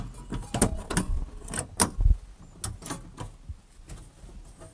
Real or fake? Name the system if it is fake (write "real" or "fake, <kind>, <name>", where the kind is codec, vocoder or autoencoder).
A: real